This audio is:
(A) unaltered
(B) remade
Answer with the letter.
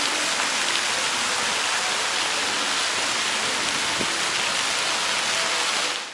A